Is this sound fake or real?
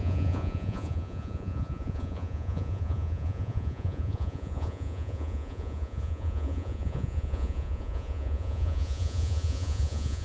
fake